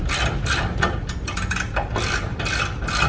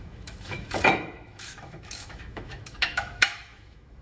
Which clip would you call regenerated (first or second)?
second